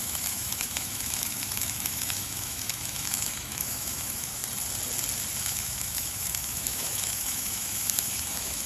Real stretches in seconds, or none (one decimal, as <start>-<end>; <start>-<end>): 4.4-5.4